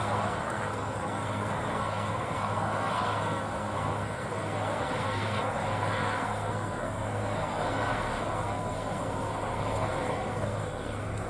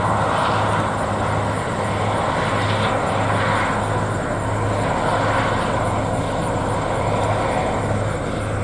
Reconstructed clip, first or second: first